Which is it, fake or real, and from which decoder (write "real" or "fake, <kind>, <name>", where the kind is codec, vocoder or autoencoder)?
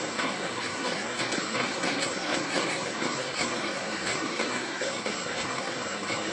fake, codec, SNAC